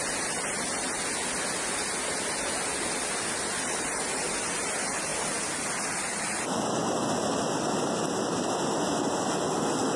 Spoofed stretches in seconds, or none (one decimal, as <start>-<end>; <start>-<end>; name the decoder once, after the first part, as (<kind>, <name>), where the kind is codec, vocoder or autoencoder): none